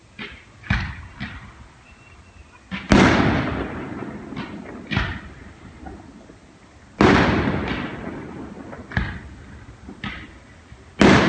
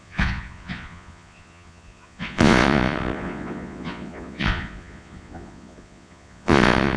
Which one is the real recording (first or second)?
first